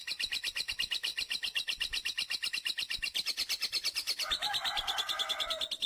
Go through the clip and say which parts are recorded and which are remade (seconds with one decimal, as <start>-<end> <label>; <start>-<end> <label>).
0.0-5.9 recorded